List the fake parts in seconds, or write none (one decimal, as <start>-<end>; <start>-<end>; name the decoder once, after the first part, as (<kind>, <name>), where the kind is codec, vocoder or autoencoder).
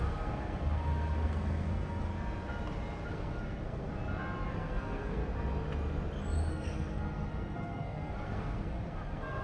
0.0-2.1 (codec, SNAC); 3.1-3.9; 4.5-5.2; 6.5-9.4